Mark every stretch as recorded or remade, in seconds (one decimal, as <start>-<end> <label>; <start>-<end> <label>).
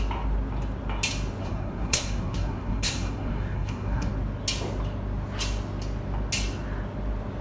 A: 0.0-1.4 recorded; 1.4-4.1 remade; 4.1-7.4 recorded